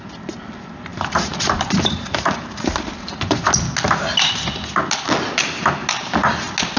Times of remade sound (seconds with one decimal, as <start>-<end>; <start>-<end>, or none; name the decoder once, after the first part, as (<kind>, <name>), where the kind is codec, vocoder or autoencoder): 0.9-3.4 (vocoder, BigVGAN v2)